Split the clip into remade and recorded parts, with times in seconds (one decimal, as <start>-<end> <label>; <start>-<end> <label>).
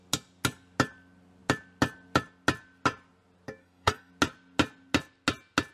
0.0-3.6 recorded; 3.6-4.1 remade; 4.1-5.7 recorded